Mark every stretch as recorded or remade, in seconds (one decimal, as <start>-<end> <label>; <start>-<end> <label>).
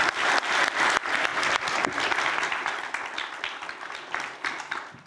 0.0-5.1 recorded